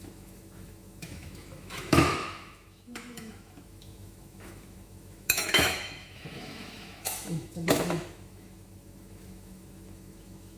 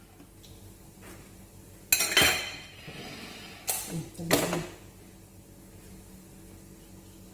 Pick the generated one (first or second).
first